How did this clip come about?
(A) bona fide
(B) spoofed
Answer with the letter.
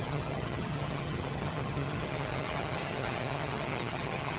B